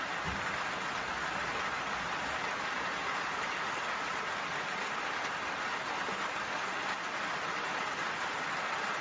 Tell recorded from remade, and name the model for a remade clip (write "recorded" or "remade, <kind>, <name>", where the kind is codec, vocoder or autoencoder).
recorded